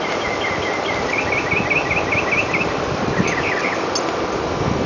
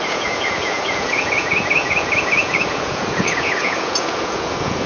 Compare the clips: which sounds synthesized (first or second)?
second